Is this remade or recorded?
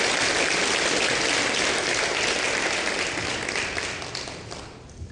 recorded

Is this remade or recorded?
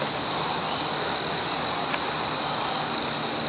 recorded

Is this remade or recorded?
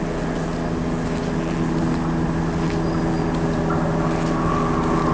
recorded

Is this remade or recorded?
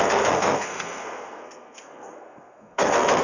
remade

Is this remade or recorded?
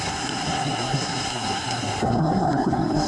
remade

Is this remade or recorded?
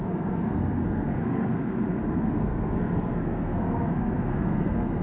remade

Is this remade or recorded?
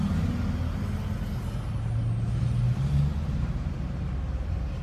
recorded